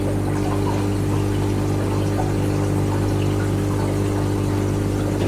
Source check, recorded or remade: recorded